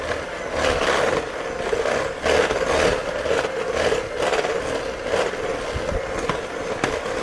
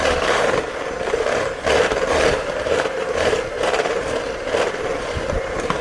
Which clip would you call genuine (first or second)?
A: first